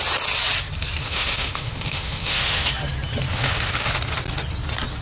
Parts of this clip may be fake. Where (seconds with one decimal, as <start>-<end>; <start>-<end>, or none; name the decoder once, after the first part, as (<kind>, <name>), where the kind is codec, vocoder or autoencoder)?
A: 1.0-2.7 (autoencoder, DAC-VAE); 3.3-3.9